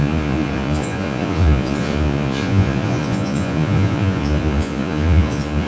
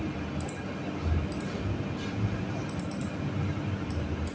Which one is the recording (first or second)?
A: second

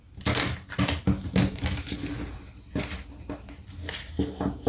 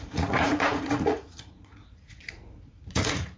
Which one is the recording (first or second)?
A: first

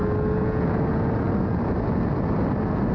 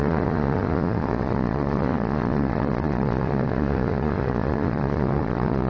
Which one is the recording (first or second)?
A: first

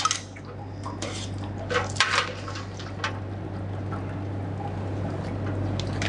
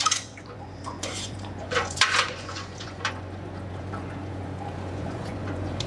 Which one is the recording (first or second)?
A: first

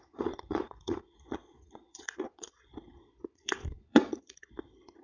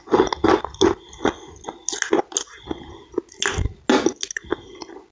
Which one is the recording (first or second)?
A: second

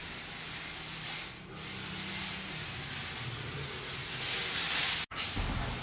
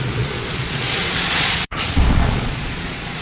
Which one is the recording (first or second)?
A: first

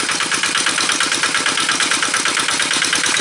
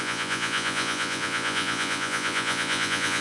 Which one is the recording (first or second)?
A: first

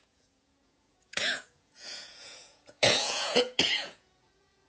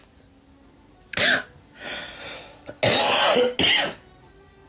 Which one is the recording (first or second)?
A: second